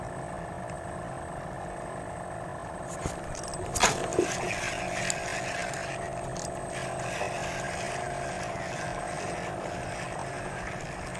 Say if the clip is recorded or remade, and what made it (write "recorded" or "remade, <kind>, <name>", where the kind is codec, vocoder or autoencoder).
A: recorded